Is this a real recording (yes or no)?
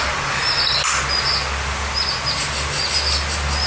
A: yes